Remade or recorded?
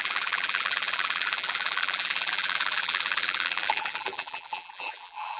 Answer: remade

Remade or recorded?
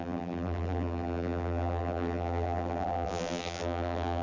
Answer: remade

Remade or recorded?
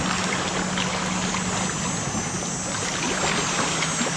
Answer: recorded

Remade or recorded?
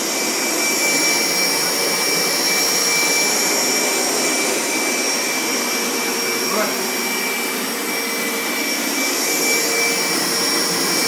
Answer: recorded